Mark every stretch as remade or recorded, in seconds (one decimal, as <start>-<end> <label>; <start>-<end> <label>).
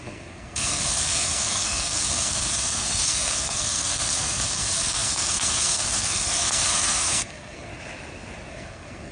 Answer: 0.0-7.7 remade; 7.7-8.5 recorded; 8.5-9.1 remade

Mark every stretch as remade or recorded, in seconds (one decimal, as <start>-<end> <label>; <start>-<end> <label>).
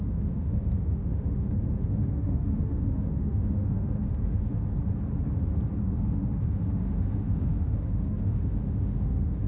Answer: 0.0-4.7 remade; 4.7-5.8 recorded; 5.8-9.5 remade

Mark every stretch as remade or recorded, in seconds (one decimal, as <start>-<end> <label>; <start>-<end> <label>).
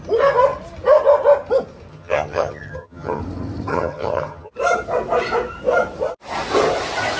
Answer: 0.0-1.9 recorded; 1.9-3.2 remade; 3.2-3.7 recorded; 3.7-4.5 remade; 4.5-7.2 recorded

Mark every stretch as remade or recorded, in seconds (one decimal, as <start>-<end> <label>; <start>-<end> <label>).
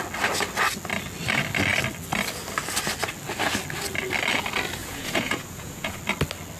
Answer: 0.0-4.8 recorded; 4.8-6.0 remade; 6.0-6.6 recorded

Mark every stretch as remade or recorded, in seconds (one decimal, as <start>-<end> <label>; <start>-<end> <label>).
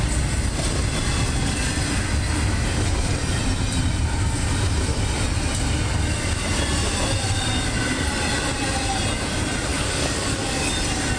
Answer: 0.0-9.7 recorded; 9.7-10.7 remade; 10.7-11.2 recorded